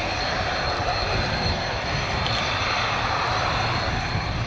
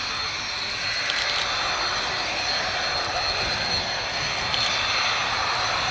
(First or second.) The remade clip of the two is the first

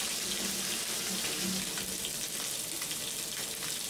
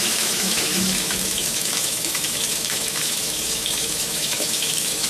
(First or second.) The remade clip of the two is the second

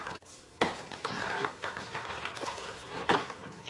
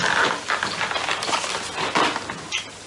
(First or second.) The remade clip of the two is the first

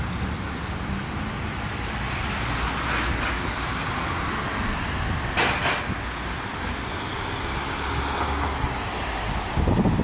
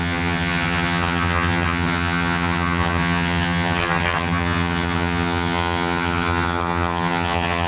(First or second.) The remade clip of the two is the second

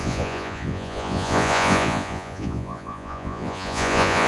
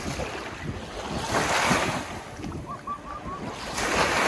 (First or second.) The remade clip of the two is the first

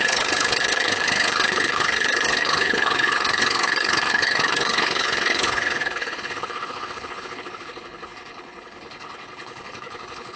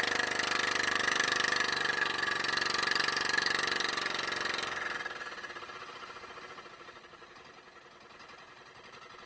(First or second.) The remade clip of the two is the first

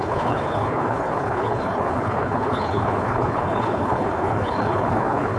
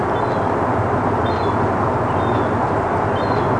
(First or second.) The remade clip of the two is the first